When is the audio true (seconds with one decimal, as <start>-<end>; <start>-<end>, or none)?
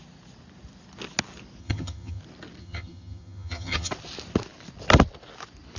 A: 0.0-1.6; 2.2-2.6; 3.9-5.8